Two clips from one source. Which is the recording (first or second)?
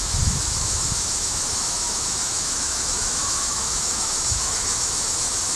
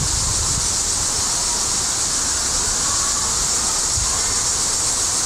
second